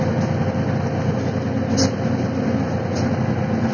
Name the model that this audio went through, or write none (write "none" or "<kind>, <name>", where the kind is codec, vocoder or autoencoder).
none